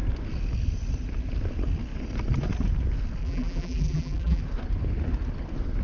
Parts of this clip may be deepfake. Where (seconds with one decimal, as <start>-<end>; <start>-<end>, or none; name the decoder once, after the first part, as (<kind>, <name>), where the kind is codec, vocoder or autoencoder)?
3.2-4.4 (vocoder, BigVGAN v2)